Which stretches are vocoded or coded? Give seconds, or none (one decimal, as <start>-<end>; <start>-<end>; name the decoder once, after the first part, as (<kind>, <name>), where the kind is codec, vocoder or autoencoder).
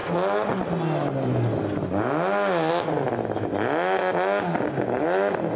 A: none